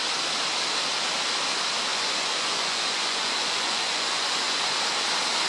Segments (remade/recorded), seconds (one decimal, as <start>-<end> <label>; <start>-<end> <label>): 0.0-1.9 recorded; 1.9-4.6 remade; 4.6-5.5 recorded